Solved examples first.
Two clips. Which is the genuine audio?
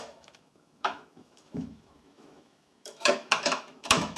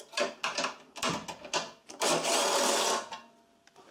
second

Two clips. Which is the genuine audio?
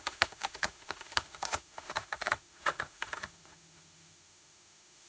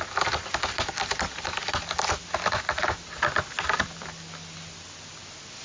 second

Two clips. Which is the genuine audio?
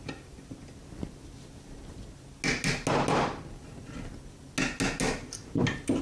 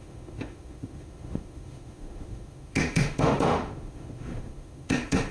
first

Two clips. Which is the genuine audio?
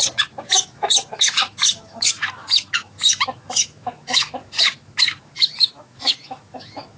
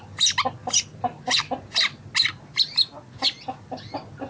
second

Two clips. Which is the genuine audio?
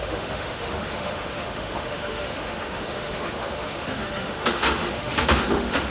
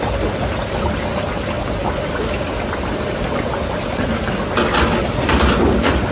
second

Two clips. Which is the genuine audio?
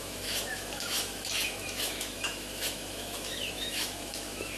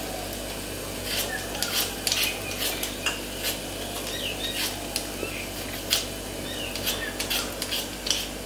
second